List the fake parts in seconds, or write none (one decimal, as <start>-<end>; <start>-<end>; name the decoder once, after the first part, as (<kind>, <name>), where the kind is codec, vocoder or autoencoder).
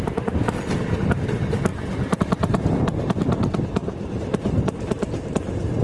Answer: 0.0-1.7 (vocoder, BigVGAN v2); 2.2-5.8